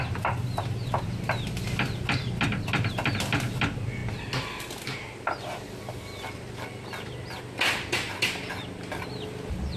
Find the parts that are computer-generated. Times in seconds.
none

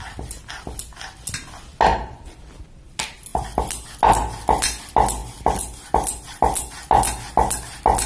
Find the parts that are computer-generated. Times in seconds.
1.9-2.4 (vocoder, BigVGAN v2)